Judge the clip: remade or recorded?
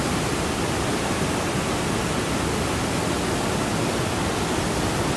recorded